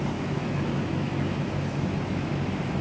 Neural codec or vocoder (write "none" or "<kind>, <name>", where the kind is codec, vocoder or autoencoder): autoencoder, DAC-VAE